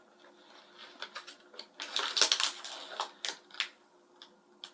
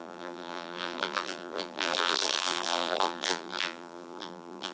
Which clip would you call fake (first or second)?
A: second